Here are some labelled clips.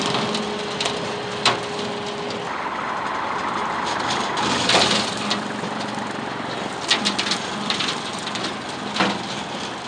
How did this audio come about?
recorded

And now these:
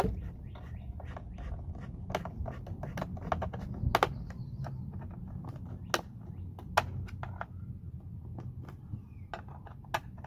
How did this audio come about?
recorded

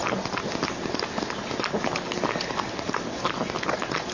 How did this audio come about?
recorded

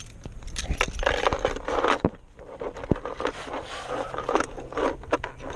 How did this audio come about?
recorded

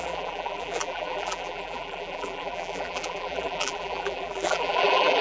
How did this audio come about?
remade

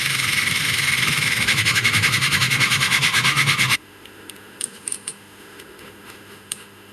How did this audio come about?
remade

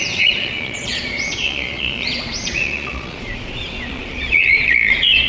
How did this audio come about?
remade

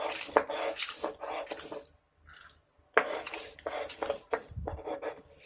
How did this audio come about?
remade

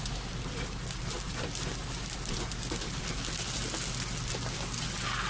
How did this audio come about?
recorded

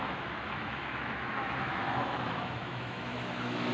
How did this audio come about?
remade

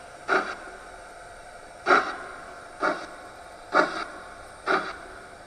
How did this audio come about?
recorded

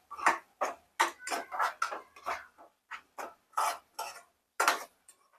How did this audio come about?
recorded